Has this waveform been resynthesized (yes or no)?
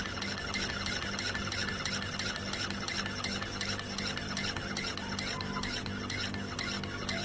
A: no